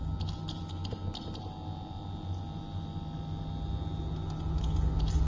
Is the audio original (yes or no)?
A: yes